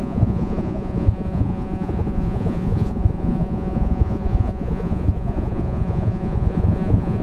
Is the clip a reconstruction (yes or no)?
yes